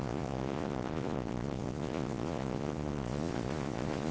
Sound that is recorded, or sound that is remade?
remade